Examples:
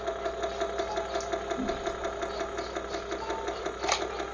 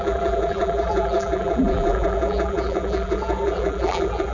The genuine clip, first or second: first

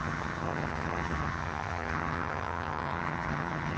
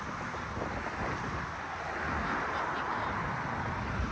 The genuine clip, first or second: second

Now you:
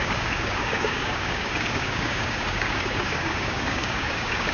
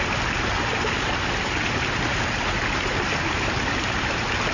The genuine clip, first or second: second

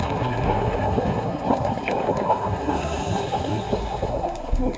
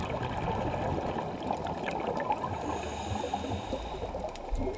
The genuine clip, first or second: second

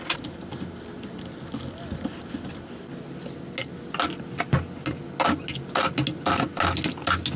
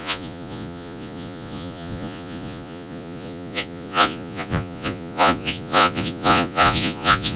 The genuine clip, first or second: first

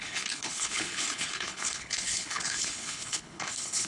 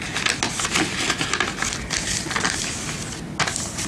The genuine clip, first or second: second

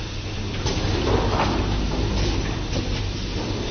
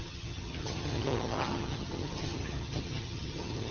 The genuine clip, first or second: first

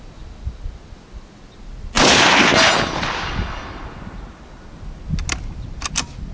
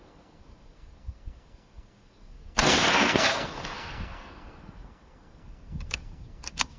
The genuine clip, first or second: first